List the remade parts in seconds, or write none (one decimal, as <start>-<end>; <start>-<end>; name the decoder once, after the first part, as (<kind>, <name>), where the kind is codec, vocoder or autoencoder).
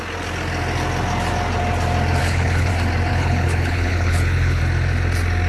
2.2-2.7 (codec, HILCodec); 3.1-4.6